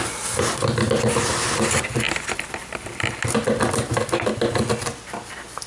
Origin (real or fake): real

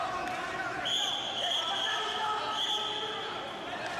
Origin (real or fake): real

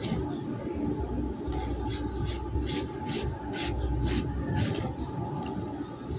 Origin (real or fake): real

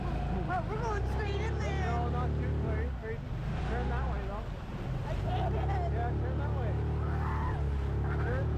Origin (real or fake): real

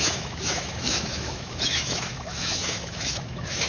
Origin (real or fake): fake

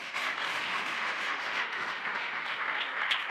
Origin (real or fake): fake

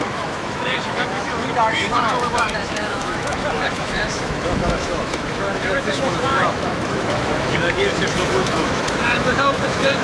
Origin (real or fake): fake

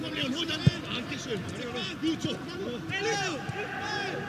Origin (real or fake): real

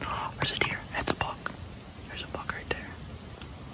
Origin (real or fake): real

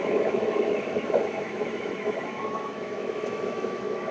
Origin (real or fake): fake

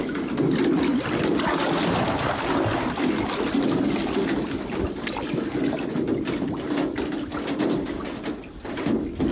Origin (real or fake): real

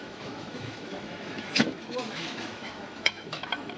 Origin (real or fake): fake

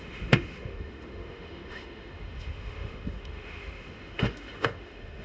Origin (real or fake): fake